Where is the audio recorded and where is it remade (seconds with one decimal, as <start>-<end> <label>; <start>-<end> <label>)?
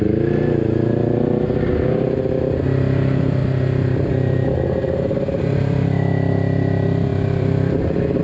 0.0-7.1 recorded; 7.1-8.2 remade